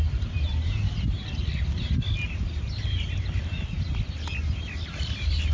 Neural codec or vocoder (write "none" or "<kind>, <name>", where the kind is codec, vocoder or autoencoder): none